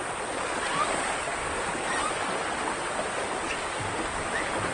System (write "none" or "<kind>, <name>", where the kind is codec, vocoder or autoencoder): none